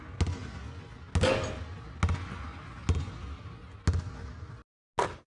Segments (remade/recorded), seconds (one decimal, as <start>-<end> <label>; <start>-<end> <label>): 0.0-5.3 recorded